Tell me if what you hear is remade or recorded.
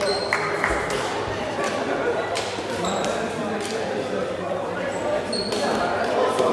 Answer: remade